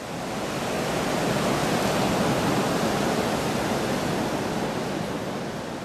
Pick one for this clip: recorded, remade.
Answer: recorded